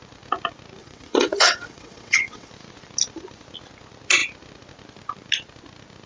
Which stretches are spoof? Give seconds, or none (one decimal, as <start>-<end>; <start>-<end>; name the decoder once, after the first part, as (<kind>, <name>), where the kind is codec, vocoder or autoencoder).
0.8-2.5 (vocoder, WaveNeXt)